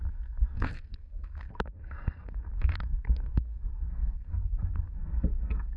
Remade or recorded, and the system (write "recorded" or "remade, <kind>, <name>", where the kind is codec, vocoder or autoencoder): remade, codec, SNAC